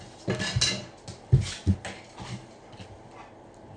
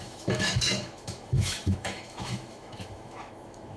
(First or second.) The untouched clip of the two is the first